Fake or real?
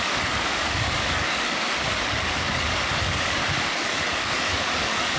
fake